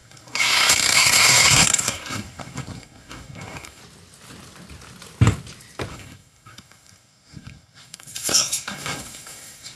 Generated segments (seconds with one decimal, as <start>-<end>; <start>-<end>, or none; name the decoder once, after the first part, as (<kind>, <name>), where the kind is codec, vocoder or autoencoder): 0.0-3.8 (codec, SNAC); 5.9-9.8